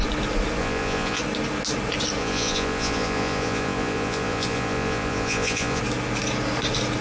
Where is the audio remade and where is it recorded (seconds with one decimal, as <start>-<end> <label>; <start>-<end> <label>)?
0.0-0.6 recorded; 0.6-1.2 remade; 1.2-2.2 recorded; 2.2-5.8 remade; 5.8-7.0 recorded

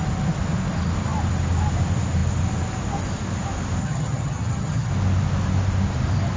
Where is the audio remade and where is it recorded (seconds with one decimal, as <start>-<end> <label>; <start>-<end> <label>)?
0.0-3.8 recorded; 3.8-4.9 remade; 4.9-6.4 recorded

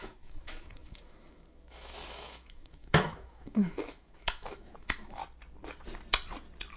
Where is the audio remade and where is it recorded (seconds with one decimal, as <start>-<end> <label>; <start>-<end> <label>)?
0.0-5.2 remade; 5.2-6.8 recorded

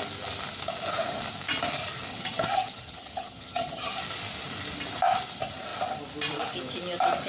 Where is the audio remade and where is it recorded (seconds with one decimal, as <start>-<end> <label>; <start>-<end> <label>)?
0.0-2.1 recorded; 2.1-4.0 remade; 4.0-7.3 recorded

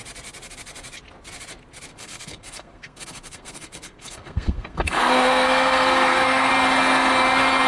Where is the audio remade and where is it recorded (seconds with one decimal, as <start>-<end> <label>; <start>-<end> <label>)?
0.0-1.9 recorded; 1.9-6.5 remade; 6.5-7.7 recorded

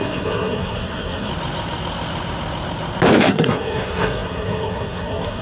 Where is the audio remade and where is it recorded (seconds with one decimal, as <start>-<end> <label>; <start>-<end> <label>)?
0.0-1.3 remade; 1.3-3.3 recorded; 3.3-5.4 remade